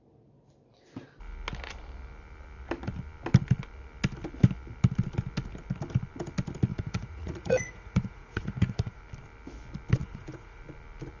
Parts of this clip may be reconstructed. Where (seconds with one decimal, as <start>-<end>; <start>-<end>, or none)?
6.7-9.0; 10.0-10.6

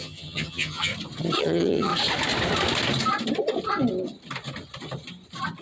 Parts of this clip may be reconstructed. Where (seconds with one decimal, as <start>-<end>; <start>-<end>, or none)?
0.0-0.9; 1.4-1.9

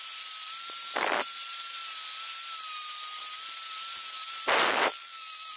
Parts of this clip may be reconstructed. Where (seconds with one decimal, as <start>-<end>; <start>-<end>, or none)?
4.9-5.6

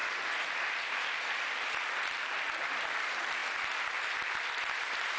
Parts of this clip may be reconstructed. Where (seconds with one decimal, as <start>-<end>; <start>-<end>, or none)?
none

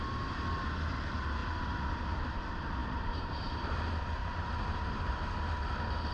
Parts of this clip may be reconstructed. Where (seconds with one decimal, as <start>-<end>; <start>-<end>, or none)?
2.8-3.8; 4.2-5.1